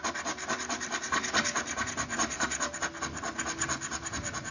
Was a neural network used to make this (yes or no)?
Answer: yes